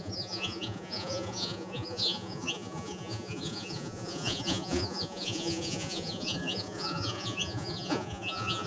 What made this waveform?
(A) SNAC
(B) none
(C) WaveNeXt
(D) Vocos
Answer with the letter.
D